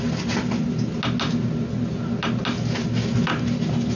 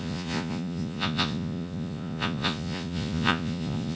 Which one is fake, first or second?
second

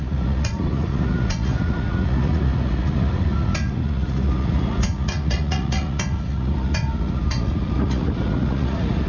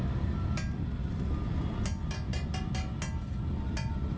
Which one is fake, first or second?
first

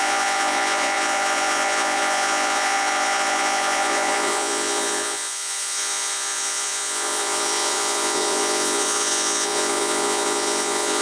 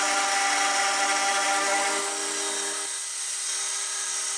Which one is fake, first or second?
first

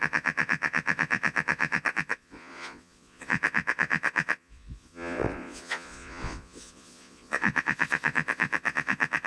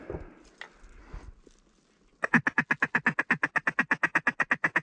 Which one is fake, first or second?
first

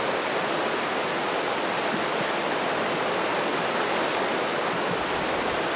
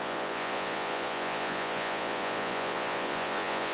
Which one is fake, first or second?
second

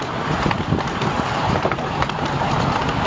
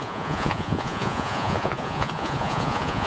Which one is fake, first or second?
second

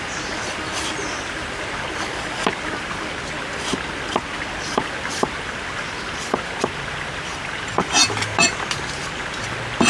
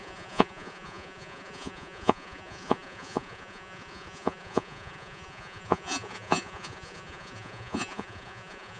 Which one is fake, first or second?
second